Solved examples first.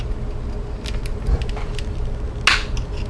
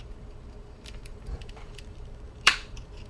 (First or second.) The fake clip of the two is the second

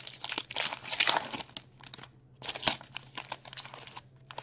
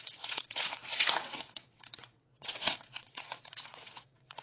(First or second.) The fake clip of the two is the second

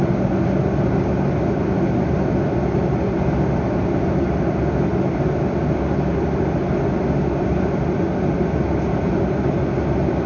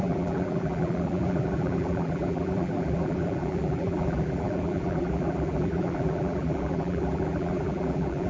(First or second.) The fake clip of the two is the second